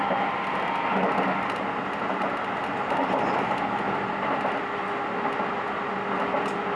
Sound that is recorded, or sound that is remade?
recorded